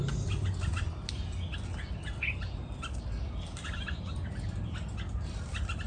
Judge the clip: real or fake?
real